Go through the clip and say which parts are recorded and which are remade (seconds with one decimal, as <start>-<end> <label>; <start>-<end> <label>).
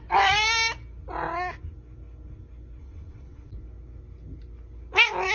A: 0.0-2.8 recorded; 2.8-3.5 remade; 3.5-5.3 recorded